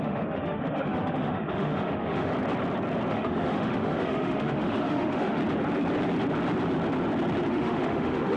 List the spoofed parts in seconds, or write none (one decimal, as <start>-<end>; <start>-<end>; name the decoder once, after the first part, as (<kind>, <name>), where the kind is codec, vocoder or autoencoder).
0.0-2.3 (autoencoder, DAC-VAE); 3.1-5.4; 7.5-8.4